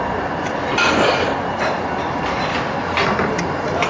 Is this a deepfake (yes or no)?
no